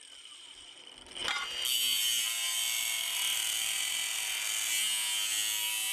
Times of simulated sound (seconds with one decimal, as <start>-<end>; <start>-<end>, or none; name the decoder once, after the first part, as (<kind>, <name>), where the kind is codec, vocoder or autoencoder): none